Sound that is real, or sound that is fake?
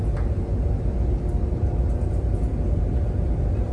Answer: real